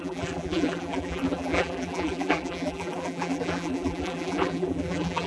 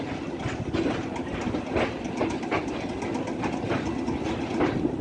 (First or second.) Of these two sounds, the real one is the second